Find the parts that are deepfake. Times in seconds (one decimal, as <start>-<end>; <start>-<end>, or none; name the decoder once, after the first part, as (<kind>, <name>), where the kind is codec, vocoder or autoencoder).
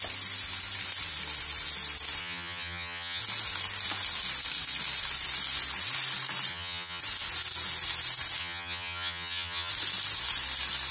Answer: 2.2-3.2 (vocoder, HiFi-GAN); 6.5-7.0; 8.4-9.7